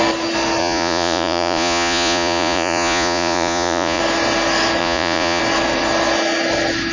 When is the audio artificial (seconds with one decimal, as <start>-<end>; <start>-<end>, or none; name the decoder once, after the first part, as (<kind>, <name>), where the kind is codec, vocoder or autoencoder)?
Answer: 0.6-4.0 (vocoder, Vocos); 4.8-5.4